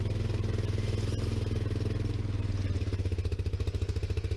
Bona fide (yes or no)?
yes